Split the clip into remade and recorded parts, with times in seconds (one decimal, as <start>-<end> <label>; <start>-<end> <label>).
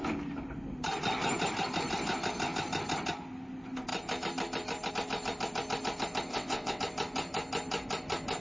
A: 0.0-6.3 recorded; 6.3-6.8 remade; 6.8-8.4 recorded